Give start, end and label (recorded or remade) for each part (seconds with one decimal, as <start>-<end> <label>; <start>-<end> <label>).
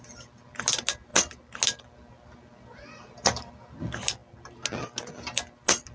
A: 0.0-5.9 recorded